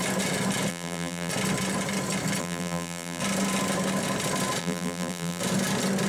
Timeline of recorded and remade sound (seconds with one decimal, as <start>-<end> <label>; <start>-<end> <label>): 0.0-0.7 recorded; 0.7-1.3 remade; 1.3-2.4 recorded; 2.4-3.2 remade; 3.2-4.6 recorded; 4.6-5.4 remade; 5.4-6.1 recorded